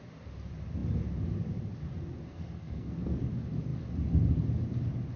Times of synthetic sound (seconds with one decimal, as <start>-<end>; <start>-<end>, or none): 2.3-3.2